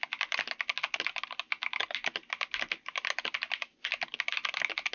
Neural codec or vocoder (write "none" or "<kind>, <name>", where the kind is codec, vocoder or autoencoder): none